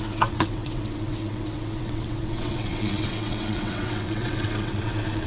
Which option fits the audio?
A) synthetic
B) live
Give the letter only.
A